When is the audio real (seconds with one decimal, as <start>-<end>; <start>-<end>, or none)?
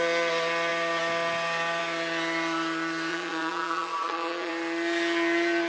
0.0-3.1; 4.5-5.7